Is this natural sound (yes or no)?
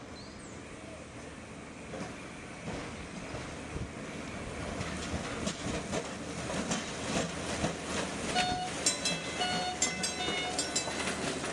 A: yes